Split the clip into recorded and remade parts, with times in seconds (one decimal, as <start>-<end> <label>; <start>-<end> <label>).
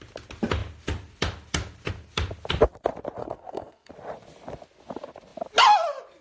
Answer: 0.0-3.2 recorded; 3.2-3.9 remade; 3.9-6.2 recorded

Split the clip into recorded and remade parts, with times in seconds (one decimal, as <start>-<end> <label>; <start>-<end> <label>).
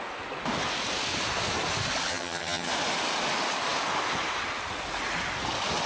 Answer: 0.0-2.1 recorded; 2.1-2.7 remade; 2.7-5.9 recorded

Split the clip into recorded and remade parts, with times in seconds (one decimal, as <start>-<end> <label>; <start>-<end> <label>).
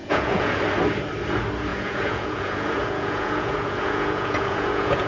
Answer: 0.0-0.6 remade; 0.6-1.7 recorded; 1.7-5.1 remade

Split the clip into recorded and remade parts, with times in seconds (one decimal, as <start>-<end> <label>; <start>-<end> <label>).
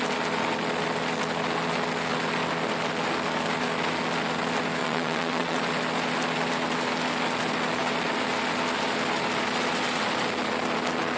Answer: 0.0-4.8 recorded; 4.8-5.6 remade; 5.6-11.2 recorded